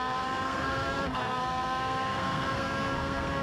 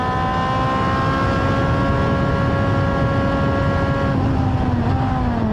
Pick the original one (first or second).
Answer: second